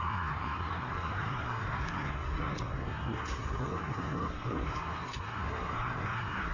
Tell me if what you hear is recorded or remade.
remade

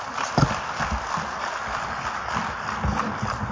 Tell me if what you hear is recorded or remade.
recorded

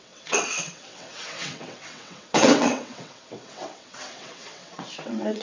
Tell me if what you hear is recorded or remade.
remade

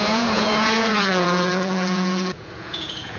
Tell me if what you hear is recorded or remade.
remade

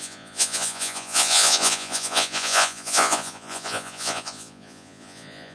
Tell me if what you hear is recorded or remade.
remade